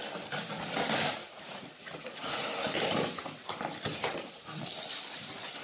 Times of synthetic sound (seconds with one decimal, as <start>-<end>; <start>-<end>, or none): 1.2-2.5